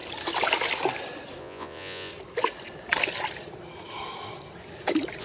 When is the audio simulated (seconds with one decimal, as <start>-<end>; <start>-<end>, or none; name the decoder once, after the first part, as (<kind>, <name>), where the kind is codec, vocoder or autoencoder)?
1.4-2.1 (vocoder, Vocos)